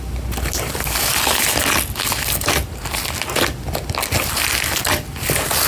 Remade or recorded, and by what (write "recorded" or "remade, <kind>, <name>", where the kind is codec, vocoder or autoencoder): recorded